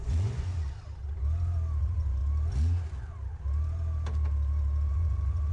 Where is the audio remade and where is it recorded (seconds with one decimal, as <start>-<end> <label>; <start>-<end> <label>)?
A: 0.0-0.5 remade; 0.5-1.8 recorded; 1.8-2.2 remade; 2.2-4.9 recorded; 4.9-5.5 remade